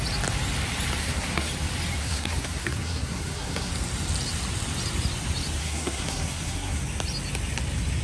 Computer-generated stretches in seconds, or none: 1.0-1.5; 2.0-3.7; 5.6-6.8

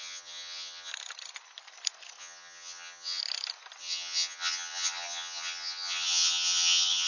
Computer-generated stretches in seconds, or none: 0.0-0.9; 2.2-3.2; 3.8-7.1

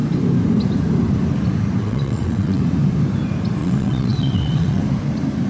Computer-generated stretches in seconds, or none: 1.8-2.6; 3.6-4.8

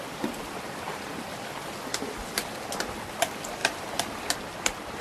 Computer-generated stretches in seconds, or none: 3.6-4.3

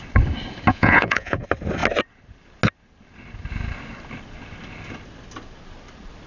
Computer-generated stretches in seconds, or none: 0.7-1.4

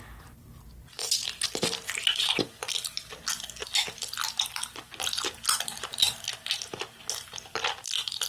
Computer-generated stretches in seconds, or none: none

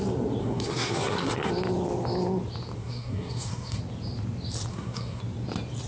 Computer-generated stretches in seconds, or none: 0.4-1.5; 2.8-3.8; 4.7-5.2

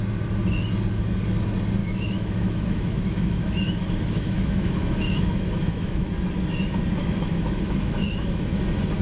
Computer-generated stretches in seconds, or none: 1.8-6.1; 7.0-8.6